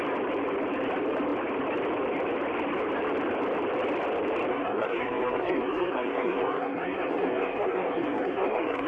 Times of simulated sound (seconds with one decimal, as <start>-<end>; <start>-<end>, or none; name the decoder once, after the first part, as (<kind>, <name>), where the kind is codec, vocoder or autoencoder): 4.5-8.9 (codec, SNAC)